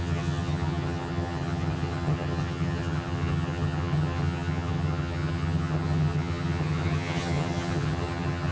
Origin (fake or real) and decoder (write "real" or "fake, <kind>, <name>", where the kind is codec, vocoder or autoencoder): fake, vocoder, HiFi-GAN